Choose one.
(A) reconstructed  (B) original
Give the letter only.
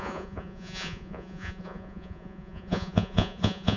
A